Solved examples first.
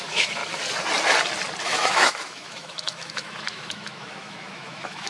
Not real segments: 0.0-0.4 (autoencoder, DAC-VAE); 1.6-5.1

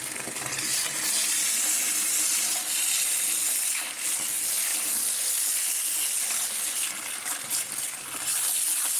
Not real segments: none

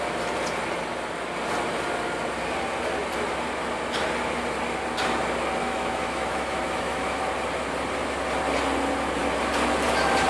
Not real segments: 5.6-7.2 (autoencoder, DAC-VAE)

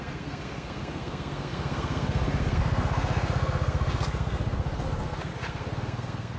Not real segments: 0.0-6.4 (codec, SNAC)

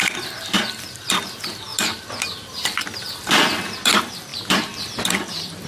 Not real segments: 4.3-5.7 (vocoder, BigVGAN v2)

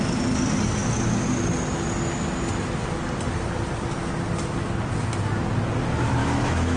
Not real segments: 6.2-6.8 (autoencoder, DAC-VAE)